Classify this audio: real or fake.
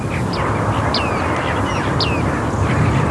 real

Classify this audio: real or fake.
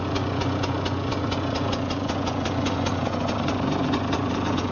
fake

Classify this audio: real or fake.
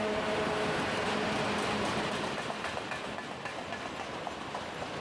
real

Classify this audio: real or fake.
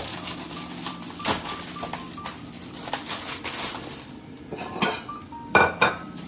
fake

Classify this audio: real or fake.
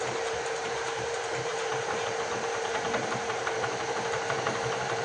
fake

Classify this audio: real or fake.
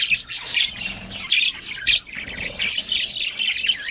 real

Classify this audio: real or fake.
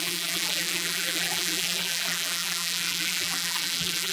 fake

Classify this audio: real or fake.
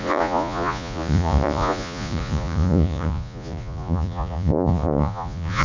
fake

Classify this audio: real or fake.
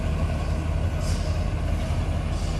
real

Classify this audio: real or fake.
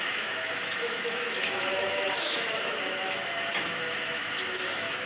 fake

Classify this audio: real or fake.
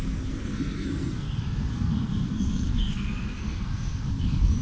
fake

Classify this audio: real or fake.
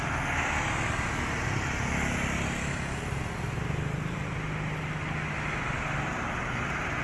real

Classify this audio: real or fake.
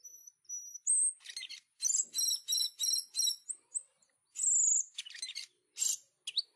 real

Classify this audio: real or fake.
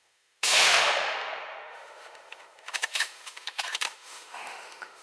fake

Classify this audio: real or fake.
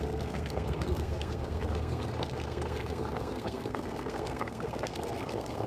fake